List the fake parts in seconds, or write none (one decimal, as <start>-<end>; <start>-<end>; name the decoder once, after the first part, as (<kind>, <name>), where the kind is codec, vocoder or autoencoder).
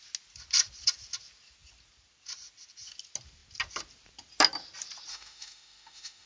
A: 5.1-6.3 (autoencoder, DAC-VAE)